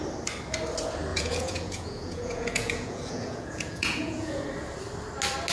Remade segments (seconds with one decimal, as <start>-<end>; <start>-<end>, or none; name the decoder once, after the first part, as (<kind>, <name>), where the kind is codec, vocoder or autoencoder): 1.1-4.4 (vocoder, Vocos)